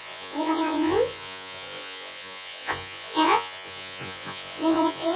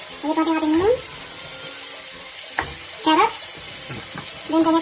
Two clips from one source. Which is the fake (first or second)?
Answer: first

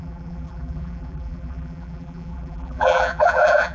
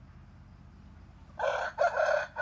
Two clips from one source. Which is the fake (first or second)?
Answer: first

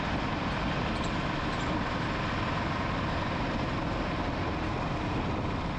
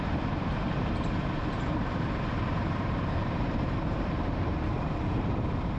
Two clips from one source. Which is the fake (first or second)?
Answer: second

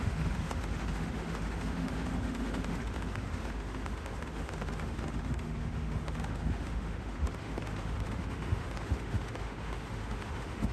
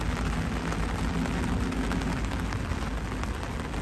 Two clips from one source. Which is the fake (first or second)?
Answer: first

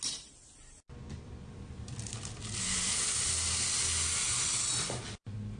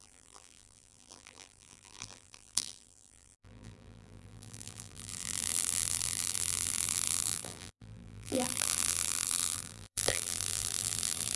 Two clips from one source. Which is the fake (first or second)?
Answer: second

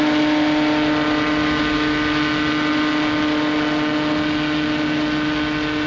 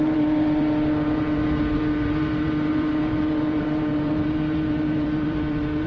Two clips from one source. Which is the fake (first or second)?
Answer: second